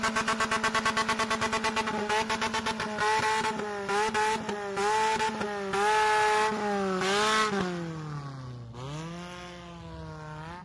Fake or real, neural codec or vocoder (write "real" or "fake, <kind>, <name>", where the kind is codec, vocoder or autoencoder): real